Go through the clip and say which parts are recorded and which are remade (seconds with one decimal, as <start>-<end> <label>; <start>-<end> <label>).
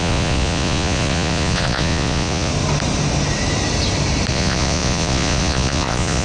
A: 0.0-2.5 remade; 2.5-4.3 recorded; 4.3-6.2 remade